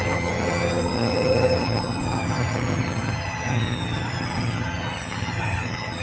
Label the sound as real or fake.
fake